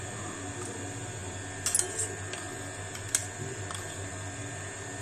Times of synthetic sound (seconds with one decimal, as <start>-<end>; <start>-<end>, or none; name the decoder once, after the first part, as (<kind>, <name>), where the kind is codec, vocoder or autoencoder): none